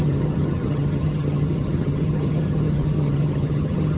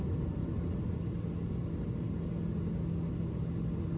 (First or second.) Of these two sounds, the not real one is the first